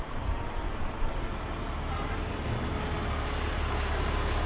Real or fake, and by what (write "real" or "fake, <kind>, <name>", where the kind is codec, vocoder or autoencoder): real